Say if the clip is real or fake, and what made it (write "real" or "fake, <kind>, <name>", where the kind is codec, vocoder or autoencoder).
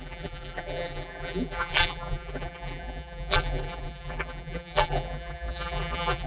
fake, vocoder, BigVGAN v2